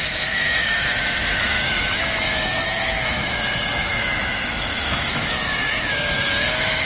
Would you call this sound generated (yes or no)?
yes